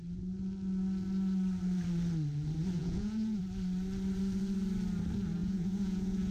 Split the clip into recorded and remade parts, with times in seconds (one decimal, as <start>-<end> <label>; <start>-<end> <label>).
0.0-2.8 recorded; 2.8-3.4 remade; 3.4-5.4 recorded; 5.4-6.3 remade